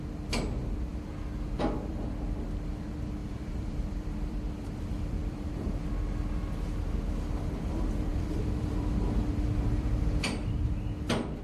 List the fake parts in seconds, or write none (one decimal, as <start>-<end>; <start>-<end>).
0.9-1.7; 3.2-5.9; 8.1-10.5